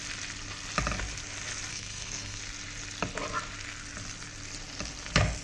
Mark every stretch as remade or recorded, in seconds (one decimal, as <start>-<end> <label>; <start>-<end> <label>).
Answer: 0.0-1.7 recorded; 1.7-2.4 remade; 2.4-5.4 recorded